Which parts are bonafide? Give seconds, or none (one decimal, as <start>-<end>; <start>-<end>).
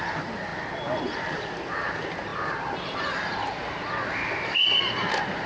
0.5-1.0